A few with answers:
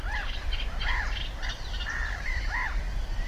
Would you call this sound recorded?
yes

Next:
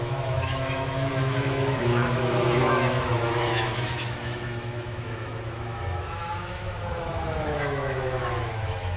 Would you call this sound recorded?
no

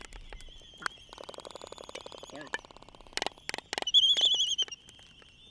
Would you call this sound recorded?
yes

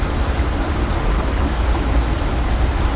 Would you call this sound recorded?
yes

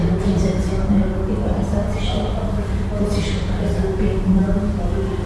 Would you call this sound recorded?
yes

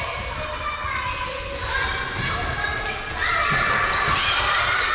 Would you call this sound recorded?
yes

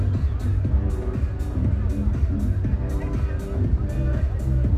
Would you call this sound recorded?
yes